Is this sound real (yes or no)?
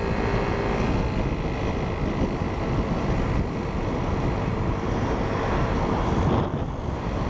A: yes